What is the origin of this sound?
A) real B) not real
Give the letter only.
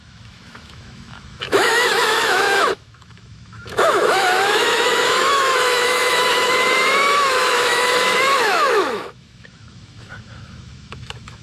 B